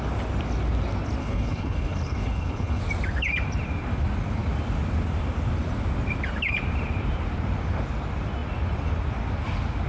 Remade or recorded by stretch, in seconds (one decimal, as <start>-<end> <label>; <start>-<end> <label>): 0.0-1.2 recorded; 1.2-2.8 remade; 2.8-9.9 recorded